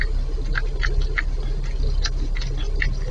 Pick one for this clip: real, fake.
real